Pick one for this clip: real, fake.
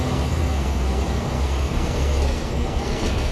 fake